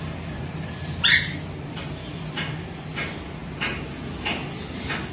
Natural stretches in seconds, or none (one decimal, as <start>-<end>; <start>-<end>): 0.0-5.1